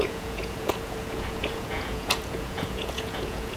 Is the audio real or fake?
fake